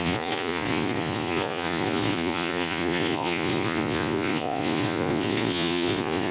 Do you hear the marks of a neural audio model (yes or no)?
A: yes